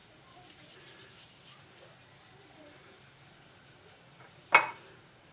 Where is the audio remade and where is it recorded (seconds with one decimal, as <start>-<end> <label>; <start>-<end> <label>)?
0.0-5.3 recorded

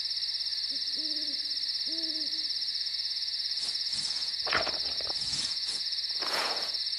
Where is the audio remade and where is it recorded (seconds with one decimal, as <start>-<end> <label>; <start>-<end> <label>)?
0.0-2.7 recorded; 2.7-7.0 remade

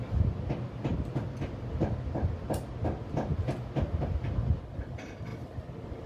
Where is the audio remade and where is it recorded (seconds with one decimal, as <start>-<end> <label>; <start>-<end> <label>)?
0.0-6.1 recorded

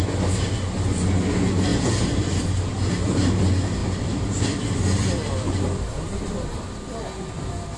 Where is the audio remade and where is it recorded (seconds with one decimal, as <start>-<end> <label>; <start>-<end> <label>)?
0.0-1.7 recorded; 1.7-3.4 remade; 3.4-3.8 recorded; 3.8-6.9 remade; 6.9-7.8 recorded

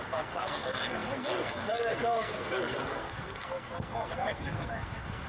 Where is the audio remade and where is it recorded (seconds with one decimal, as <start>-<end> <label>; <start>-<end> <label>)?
0.0-5.3 remade